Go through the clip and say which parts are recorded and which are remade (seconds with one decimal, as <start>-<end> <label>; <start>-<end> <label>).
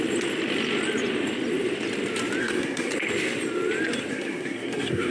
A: 0.0-2.4 recorded; 2.4-2.9 remade; 2.9-4.1 recorded; 4.1-5.1 remade